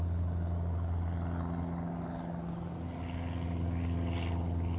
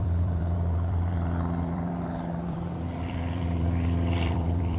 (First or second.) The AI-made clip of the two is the second